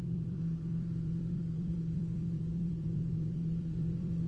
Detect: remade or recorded remade